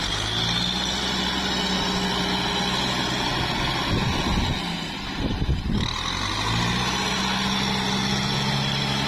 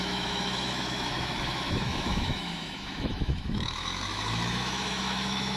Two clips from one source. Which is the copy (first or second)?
second